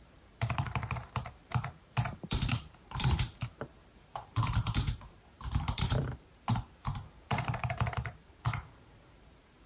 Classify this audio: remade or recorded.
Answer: remade